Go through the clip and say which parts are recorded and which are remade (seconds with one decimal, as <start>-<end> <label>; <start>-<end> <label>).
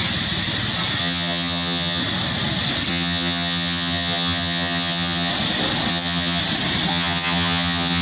0.0-1.0 recorded; 1.0-2.0 remade; 2.0-2.9 recorded; 2.9-5.3 remade; 5.3-5.9 recorded; 5.9-6.4 remade; 6.4-6.9 recorded; 6.9-8.0 remade